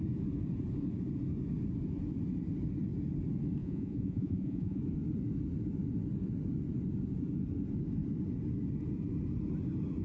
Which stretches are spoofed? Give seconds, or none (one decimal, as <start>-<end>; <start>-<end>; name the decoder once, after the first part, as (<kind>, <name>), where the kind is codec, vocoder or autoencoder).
3.6-4.8 (vocoder, Vocos)